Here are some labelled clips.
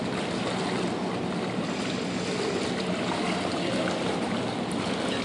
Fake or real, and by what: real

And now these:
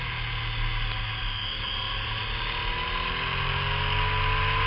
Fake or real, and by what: real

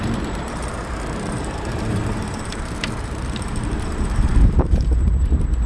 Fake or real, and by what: fake, vocoder, BigVGAN v2